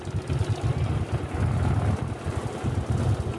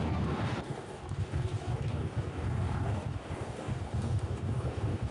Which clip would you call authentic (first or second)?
first